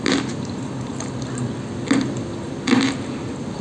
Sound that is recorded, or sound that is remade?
recorded